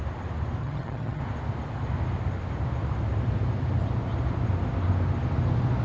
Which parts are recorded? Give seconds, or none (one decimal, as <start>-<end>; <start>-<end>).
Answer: 0.0-0.6; 1.2-5.8